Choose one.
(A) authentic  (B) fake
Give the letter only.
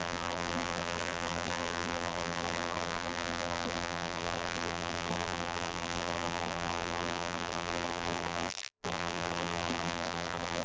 B